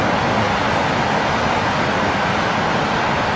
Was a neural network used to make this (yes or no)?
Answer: no